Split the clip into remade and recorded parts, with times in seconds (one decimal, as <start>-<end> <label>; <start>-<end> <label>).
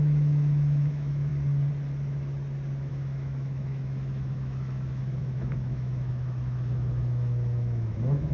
0.0-1.3 remade; 1.3-2.9 recorded; 2.9-8.3 remade